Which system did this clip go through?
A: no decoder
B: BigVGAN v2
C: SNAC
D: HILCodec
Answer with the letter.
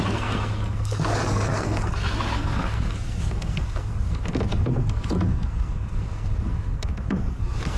C